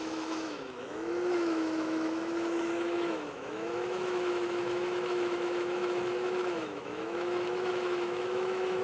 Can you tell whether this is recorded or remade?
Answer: remade